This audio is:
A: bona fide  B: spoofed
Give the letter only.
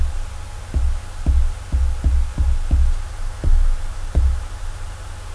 A